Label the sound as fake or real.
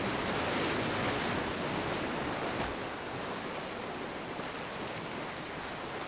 real